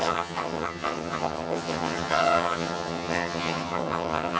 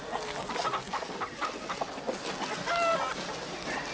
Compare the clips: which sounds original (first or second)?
second